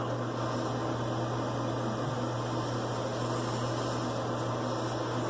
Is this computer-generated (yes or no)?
no